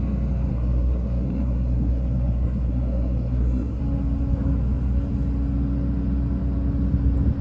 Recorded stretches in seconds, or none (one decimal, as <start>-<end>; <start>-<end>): 0.0-0.5; 3.8-7.4